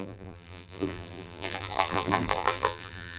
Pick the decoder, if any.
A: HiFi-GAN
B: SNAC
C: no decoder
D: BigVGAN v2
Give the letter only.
D